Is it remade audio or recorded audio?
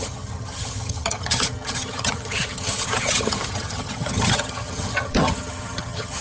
remade